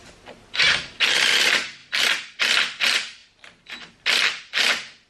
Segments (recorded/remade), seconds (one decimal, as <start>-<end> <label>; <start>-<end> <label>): 0.0-5.1 recorded